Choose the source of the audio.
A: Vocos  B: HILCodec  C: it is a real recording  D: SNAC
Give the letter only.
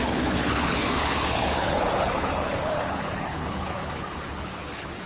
B